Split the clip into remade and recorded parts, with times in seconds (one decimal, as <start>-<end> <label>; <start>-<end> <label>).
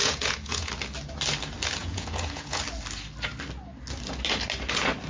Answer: 0.0-0.7 remade; 0.7-1.8 recorded; 1.8-2.6 remade; 2.6-5.1 recorded